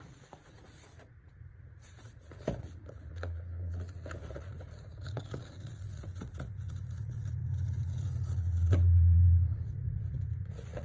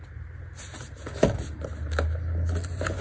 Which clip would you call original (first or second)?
second